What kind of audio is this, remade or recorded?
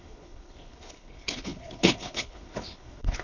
remade